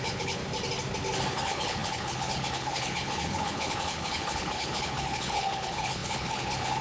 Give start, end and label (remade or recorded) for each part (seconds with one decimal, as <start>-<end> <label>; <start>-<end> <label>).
0.0-0.4 remade; 0.4-1.3 recorded; 1.3-6.8 remade